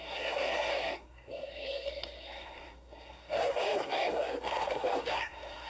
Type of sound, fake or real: fake